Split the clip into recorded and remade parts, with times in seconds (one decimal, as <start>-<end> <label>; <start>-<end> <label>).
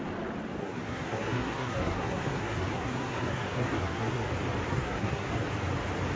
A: 0.0-0.6 recorded; 0.6-4.3 remade; 4.3-4.7 recorded; 4.7-5.3 remade; 5.3-6.2 recorded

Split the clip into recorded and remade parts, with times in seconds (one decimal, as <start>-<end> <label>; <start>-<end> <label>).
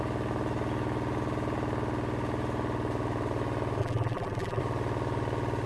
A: 0.0-3.8 recorded; 3.8-4.6 remade; 4.6-5.7 recorded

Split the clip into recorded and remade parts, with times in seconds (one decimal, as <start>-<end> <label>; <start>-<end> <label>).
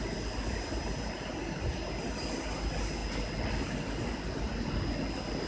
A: 0.0-5.5 recorded